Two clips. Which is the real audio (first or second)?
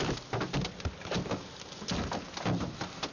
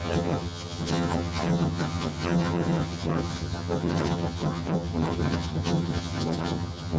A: first